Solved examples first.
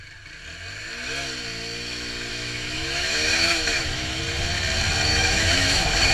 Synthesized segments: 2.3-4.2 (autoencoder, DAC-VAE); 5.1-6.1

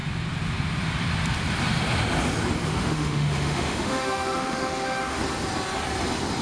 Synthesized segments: 2.7-5.2 (autoencoder, DAC-VAE)

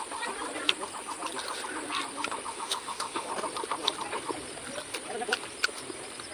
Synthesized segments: 2.5-3.3 (autoencoder, DAC-VAE)